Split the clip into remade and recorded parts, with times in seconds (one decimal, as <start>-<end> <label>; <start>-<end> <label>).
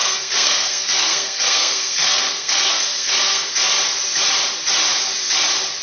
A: 0.0-3.5 remade; 3.5-5.8 recorded